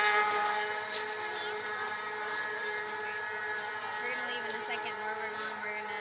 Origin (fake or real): real